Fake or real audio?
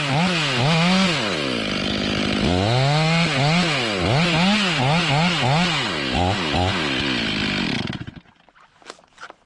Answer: real